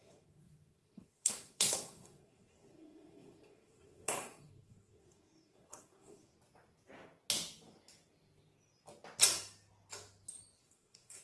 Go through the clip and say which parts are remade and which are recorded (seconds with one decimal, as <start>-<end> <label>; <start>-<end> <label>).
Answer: 0.0-6.3 remade; 6.3-10.6 recorded; 10.6-11.2 remade